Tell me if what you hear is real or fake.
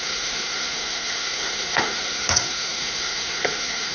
fake